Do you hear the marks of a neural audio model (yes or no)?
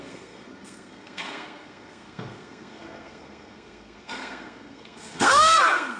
yes